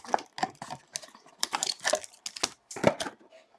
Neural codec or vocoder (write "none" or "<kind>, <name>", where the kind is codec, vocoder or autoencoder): none